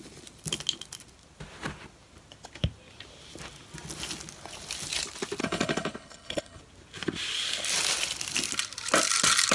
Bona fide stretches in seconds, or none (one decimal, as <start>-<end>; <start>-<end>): 0.0-5.4; 6.6-9.5